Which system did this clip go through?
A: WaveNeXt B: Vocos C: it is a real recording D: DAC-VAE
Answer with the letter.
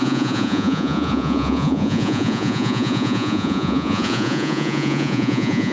B